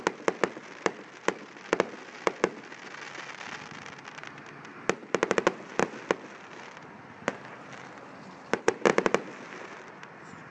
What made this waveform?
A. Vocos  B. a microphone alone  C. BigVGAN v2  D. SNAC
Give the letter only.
B